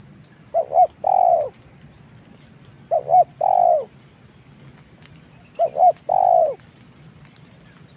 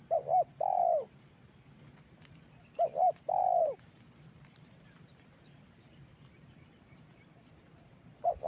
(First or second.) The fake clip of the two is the second